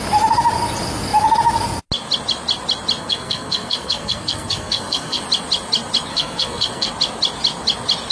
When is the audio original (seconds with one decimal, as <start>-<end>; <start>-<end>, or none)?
0.0-3.0; 5.2-6.1; 6.9-8.1